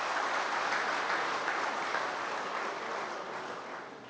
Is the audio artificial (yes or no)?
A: no